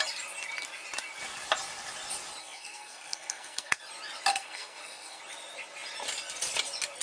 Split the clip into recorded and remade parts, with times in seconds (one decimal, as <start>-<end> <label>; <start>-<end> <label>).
0.0-2.4 recorded; 2.4-3.8 remade; 3.8-4.3 recorded; 4.3-5.2 remade; 5.2-7.0 recorded